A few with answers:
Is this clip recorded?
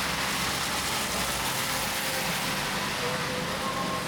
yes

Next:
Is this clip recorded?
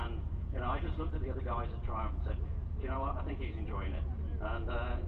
no